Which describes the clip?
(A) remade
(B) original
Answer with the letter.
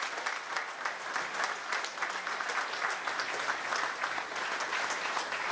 B